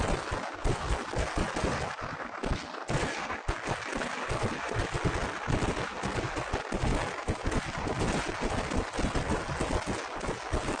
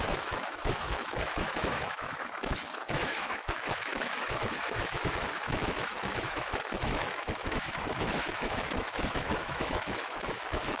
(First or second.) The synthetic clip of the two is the second